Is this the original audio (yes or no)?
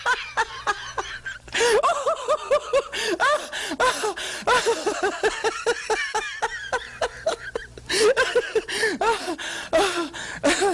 yes